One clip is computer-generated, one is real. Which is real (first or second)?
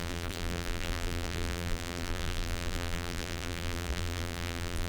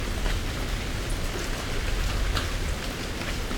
second